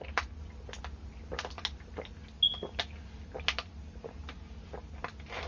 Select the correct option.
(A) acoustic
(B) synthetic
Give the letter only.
A